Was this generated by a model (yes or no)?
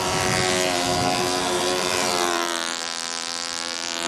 no